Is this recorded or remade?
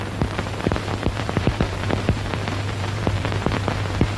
remade